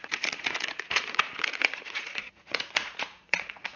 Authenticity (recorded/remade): remade